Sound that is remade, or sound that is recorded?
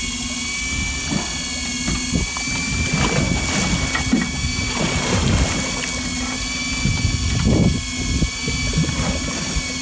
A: recorded